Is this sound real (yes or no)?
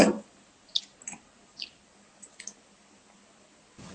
yes